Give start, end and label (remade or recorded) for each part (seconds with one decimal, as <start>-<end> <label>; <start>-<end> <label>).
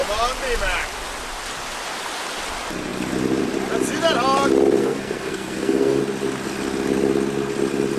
0.0-4.8 recorded; 4.8-6.0 remade; 6.0-8.0 recorded